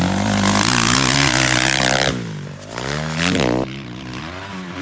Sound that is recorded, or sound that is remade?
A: recorded